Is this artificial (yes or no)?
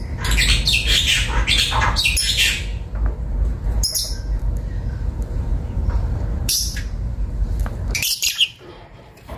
yes